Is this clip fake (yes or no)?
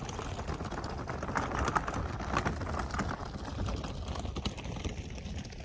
no